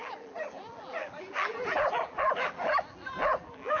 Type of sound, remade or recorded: remade